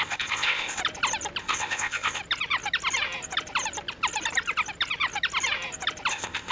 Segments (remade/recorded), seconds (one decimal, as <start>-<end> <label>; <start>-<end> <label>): 0.0-0.8 remade; 0.8-1.4 recorded; 1.4-2.2 remade; 2.2-6.1 recorded; 6.1-6.5 remade